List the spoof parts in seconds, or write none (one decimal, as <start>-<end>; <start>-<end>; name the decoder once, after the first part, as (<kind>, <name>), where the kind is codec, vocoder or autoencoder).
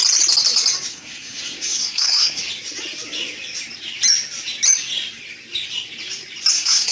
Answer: 0.9-2.4 (codec, SNAC); 6.5-6.9